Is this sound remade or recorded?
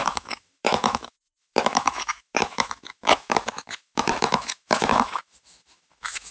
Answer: remade